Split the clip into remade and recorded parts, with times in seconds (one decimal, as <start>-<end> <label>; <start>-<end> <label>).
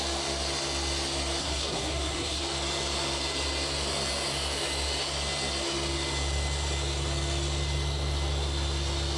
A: 0.0-1.4 recorded; 1.4-2.4 remade; 2.4-9.2 recorded